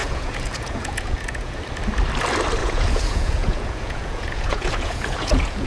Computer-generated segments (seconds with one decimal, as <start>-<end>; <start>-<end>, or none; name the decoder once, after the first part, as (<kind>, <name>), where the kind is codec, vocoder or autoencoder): 0.0-1.6 (vocoder, Vocos); 2.6-5.7